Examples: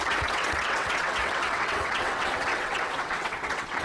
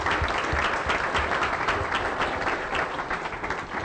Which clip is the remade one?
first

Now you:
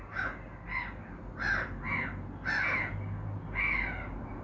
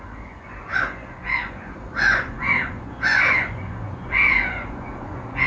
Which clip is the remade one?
second